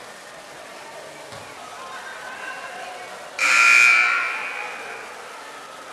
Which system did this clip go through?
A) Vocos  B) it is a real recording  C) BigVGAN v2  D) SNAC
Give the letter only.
B